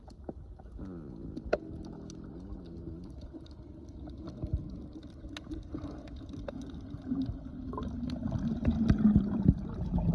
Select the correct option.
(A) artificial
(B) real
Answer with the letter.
B